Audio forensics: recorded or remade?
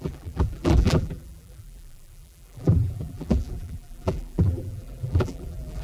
remade